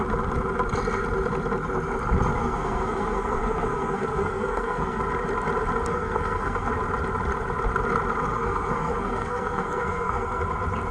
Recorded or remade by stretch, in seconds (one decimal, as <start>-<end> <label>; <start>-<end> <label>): 0.0-2.4 recorded; 2.4-5.0 remade; 5.0-5.9 recorded; 5.9-6.7 remade; 6.7-8.3 recorded; 8.3-10.4 remade; 10.4-10.9 recorded